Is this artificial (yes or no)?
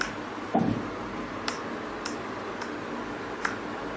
no